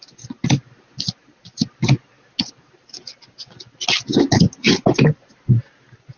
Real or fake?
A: real